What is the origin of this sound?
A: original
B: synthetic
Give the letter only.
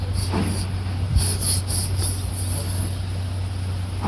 A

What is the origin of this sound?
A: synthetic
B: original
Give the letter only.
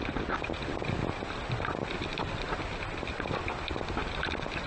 B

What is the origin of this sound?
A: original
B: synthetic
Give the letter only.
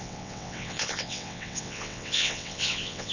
B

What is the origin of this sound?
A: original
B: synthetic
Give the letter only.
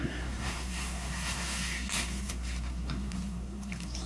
B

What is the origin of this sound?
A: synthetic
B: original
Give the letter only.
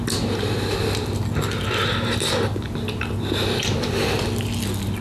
B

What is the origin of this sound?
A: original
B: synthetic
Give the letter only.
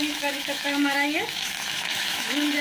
B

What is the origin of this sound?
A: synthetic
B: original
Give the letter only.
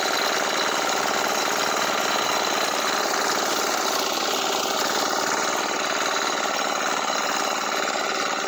B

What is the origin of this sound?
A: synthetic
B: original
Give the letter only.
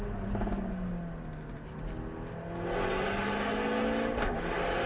B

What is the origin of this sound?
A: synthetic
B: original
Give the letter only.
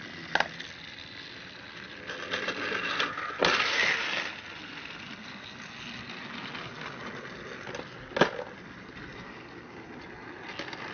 B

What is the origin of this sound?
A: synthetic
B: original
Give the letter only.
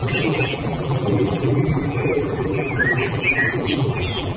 A